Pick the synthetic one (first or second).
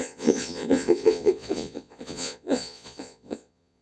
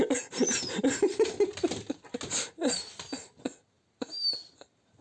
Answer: first